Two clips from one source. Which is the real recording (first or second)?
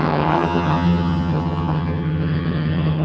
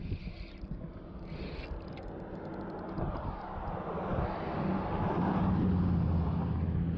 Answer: second